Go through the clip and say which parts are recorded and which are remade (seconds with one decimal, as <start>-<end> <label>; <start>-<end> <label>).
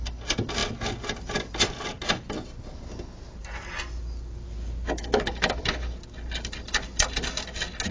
0.0-5.0 recorded; 5.0-5.6 remade; 5.6-7.9 recorded